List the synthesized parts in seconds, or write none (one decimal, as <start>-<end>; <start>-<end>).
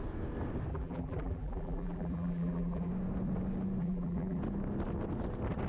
0.7-2.9; 3.8-4.4